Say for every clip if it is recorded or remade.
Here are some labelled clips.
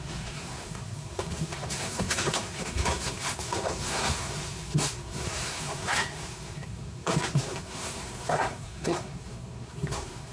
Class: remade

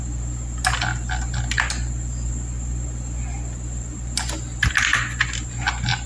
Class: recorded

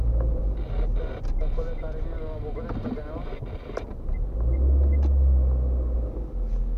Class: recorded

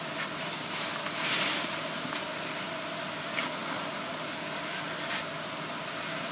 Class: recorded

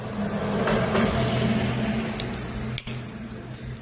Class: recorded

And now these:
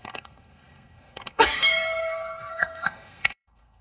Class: remade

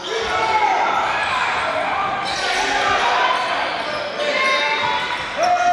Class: recorded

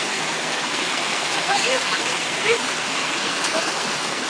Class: remade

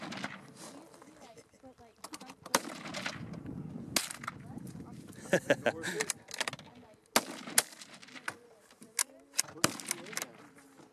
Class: recorded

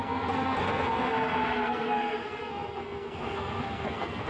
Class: remade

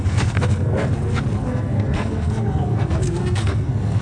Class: remade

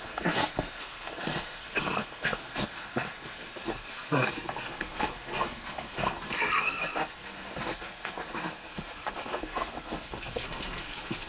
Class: remade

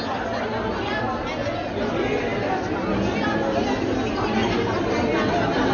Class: recorded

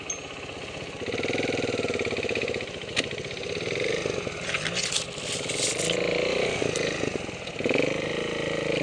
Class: recorded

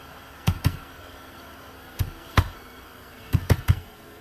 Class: remade